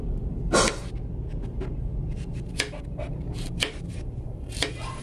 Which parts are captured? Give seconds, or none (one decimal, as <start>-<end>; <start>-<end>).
0.4-3.4

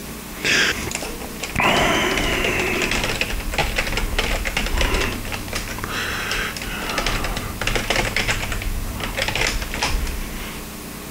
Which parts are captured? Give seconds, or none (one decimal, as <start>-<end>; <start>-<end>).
0.0-11.1

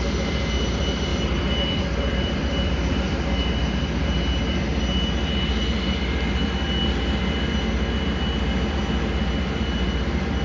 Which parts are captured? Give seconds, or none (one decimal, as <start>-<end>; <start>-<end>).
0.0-1.1; 3.5-10.4

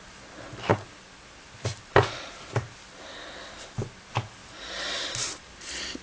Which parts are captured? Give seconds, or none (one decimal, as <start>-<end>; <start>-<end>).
4.4-5.0